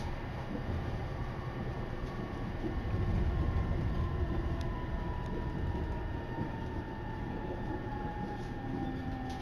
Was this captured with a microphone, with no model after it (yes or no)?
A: no